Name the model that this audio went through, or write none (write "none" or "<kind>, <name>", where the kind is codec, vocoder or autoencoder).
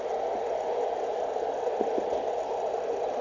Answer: none